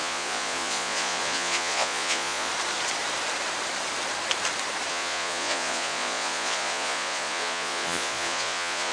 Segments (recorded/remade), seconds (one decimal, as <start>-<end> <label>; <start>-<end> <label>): 0.0-2.5 remade; 2.5-4.9 recorded; 4.9-8.9 remade